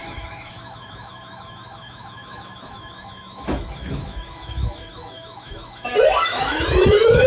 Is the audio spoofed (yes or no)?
yes